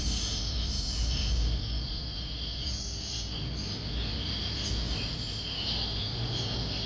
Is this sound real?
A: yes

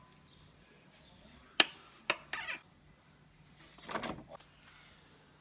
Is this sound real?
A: yes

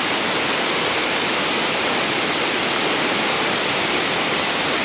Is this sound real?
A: yes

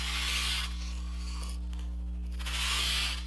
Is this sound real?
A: yes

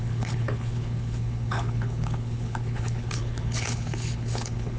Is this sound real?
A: no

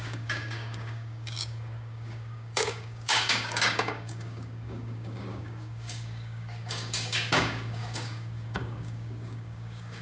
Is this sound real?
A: no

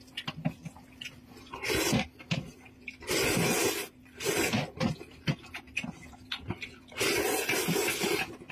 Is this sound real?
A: yes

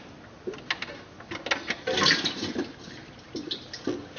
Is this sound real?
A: yes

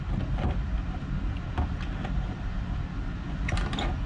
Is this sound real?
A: yes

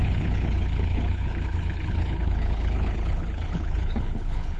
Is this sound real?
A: no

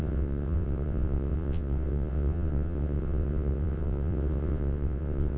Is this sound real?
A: no